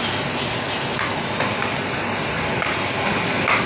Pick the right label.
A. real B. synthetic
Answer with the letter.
A